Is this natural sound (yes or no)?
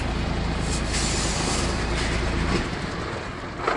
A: yes